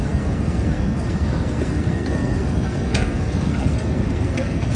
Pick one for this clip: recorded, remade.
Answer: remade